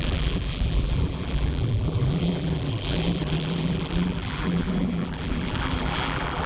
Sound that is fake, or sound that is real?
fake